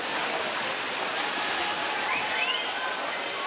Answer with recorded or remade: remade